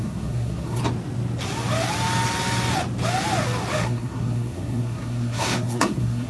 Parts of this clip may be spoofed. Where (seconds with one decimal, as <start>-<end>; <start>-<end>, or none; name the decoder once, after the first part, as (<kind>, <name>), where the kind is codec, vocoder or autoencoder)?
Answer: 0.0-0.8 (codec, SNAC); 3.8-6.3